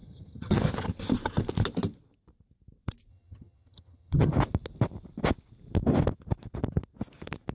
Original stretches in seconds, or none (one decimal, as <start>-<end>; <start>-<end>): 0.6-3.1; 4.3-7.5